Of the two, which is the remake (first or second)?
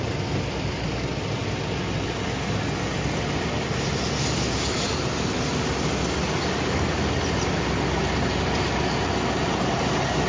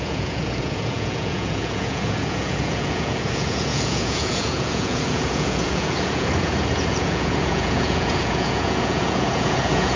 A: second